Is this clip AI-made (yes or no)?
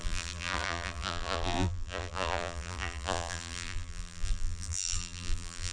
yes